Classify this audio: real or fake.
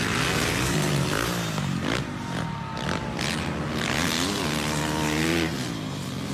real